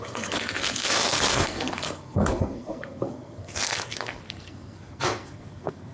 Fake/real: fake